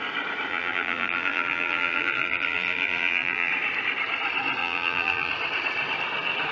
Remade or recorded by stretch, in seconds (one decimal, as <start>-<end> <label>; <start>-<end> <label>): 0.0-0.5 recorded; 0.5-3.5 remade; 3.5-4.6 recorded; 4.6-5.3 remade; 5.3-6.5 recorded